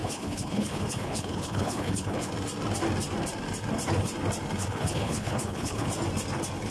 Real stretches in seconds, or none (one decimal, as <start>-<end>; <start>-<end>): 2.3-4.6; 5.9-6.7